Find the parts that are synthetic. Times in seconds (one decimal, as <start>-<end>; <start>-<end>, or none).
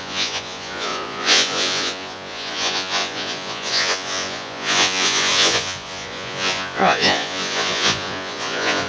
0.0-8.9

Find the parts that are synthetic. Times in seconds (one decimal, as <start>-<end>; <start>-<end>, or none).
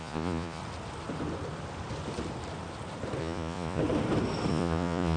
0.0-0.6; 3.2-3.8; 4.5-5.2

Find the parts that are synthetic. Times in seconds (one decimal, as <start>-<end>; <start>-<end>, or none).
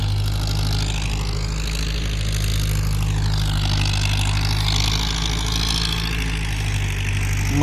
none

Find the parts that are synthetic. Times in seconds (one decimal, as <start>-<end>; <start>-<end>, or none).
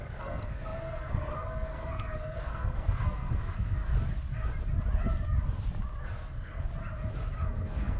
0.0-3.9; 6.0-6.7; 7.3-8.0